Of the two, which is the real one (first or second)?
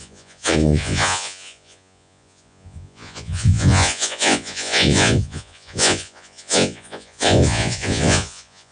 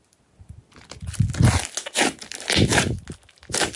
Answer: second